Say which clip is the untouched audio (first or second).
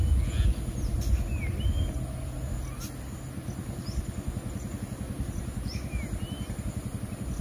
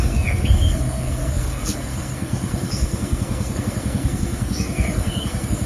first